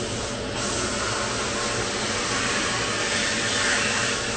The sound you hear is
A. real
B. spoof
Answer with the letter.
A